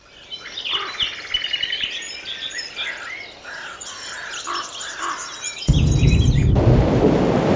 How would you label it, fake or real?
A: real